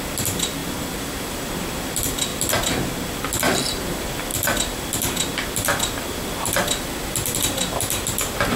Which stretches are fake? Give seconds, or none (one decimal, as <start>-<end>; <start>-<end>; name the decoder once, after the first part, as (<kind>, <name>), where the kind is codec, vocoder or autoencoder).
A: 0.0-2.3 (vocoder, BigVGAN v2); 3.3-8.6